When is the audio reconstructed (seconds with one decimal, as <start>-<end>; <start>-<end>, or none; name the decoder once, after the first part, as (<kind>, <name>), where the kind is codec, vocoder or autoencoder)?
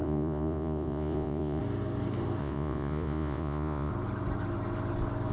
0.0-1.6 (vocoder, Vocos); 2.4-3.9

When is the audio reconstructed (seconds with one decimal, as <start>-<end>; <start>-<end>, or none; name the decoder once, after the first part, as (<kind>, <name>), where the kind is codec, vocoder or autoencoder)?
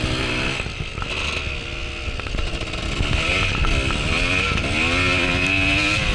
none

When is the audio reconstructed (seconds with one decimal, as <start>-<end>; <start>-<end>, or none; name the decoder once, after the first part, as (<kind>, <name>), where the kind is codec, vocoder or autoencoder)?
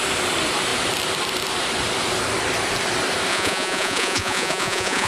3.3-5.1 (vocoder, Vocos)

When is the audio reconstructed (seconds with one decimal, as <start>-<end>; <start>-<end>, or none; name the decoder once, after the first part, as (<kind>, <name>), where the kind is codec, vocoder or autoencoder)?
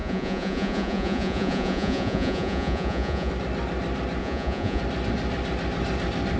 0.0-3.3 (vocoder, Vocos); 4.2-4.8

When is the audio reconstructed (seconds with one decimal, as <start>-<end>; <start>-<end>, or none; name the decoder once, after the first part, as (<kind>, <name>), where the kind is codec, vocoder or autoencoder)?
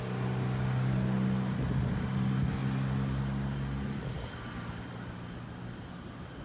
none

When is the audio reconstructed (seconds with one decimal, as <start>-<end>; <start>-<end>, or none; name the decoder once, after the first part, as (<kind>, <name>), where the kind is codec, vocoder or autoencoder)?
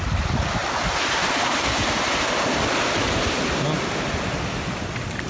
none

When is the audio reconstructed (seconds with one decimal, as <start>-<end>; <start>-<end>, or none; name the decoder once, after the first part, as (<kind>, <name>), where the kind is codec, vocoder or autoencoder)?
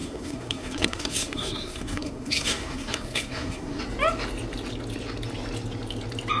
0.0-3.8 (codec, SNAC)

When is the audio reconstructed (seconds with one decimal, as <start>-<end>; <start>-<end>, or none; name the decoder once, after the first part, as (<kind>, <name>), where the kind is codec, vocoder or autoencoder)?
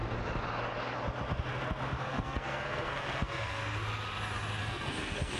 2.0-3.6 (codec, SNAC); 4.6-5.4